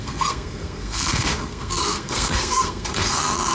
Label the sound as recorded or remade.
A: remade